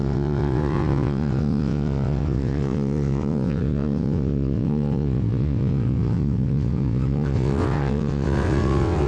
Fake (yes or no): yes